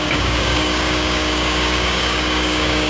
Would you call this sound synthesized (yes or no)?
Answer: yes